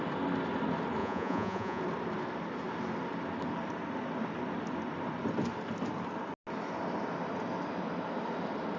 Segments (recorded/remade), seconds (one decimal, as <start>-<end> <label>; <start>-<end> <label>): 0.0-1.0 recorded; 1.0-1.8 remade; 1.8-8.8 recorded